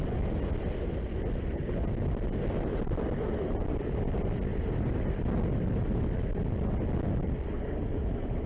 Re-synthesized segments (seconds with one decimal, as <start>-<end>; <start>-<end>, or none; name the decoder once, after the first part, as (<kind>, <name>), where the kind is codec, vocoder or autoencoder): 4.5-5.2 (vocoder, BigVGAN v2)